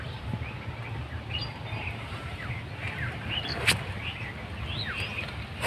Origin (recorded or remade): recorded